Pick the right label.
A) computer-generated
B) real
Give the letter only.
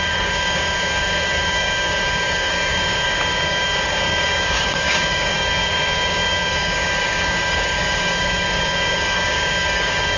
A